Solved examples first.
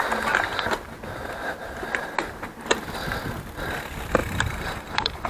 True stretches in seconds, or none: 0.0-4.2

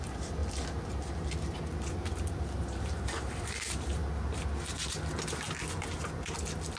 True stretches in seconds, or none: 0.4-1.9; 4.0-6.8

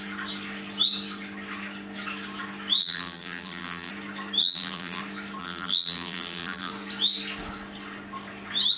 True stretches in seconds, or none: 0.0-2.8; 3.9-4.4; 5.0-5.4; 6.7-8.8

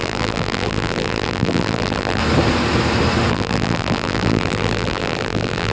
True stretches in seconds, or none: 2.2-3.3

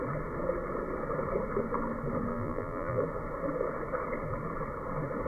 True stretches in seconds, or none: 0.0-2.3; 3.0-5.3